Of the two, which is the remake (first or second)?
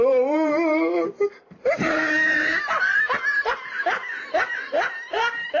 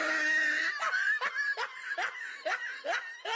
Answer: first